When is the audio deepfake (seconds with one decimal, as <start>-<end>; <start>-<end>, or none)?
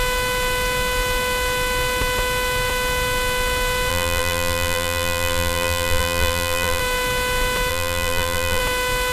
3.9-6.8; 7.7-8.6